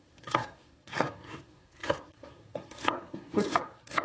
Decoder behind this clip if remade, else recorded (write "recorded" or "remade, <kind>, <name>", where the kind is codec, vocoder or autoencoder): remade, codec, SNAC